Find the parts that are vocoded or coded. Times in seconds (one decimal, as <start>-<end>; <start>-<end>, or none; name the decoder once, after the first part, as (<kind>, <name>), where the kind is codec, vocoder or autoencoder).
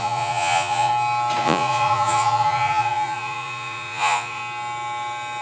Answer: 0.0-0.9 (vocoder, Vocos); 1.4-4.4